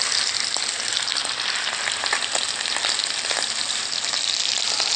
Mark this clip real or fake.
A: real